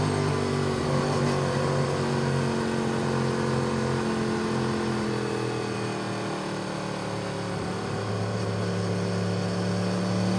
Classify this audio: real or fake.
real